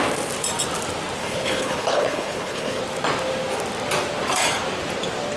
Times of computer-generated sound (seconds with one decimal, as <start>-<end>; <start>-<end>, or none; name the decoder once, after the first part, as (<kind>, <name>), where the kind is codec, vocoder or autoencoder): 1.2-2.8 (codec, HILCodec)

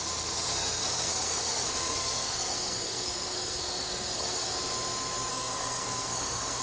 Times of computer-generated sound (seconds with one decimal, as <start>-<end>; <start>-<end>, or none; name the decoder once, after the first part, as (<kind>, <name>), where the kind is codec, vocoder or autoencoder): 0.5-4.5 (codec, SNAC); 5.3-6.6

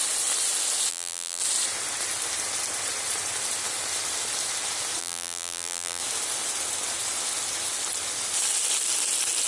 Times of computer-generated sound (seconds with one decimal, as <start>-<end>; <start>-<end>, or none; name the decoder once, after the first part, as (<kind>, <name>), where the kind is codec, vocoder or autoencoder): 0.9-1.4 (vocoder, BigVGAN v2); 5.0-6.0

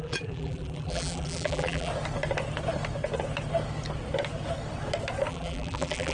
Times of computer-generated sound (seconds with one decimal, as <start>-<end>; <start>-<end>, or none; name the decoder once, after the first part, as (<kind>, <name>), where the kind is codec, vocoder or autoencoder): 0.0-1.9 (vocoder, BigVGAN v2); 5.3-6.1

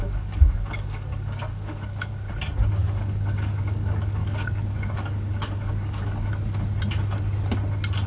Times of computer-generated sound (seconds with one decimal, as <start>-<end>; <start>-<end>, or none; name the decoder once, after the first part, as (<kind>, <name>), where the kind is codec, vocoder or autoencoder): 0.0-2.1 (codec, DAC); 2.8-6.3

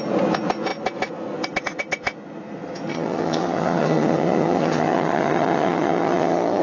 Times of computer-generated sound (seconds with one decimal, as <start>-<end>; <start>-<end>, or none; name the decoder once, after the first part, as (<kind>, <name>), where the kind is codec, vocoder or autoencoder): 2.9-6.6 (vocoder, HiFi-GAN)

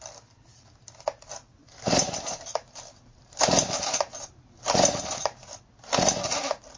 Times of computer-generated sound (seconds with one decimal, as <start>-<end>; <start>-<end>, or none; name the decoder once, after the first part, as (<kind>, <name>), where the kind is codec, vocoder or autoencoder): 1.6-5.6 (vocoder, BigVGAN v2)

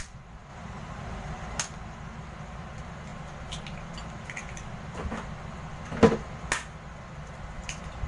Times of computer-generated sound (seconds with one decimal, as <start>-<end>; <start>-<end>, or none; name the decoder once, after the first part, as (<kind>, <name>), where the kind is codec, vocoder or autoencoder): 0.5-1.6 (vocoder, BigVGAN v2)